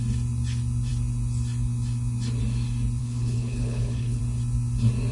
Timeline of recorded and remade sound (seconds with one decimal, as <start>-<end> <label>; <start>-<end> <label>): 0.0-3.0 recorded; 3.0-4.2 remade; 4.2-5.1 recorded